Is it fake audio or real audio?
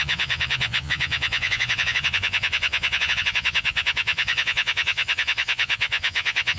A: fake